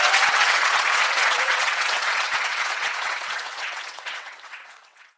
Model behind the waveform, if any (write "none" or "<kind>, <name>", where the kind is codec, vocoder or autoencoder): vocoder, WaveNeXt